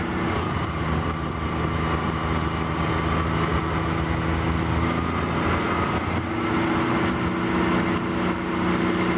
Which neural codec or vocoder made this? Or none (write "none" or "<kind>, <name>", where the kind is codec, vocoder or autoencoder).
none